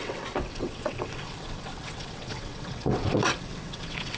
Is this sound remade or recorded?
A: remade